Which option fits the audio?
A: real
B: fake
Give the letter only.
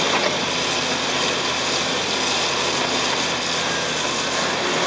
A